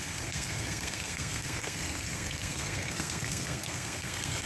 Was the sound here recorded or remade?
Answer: remade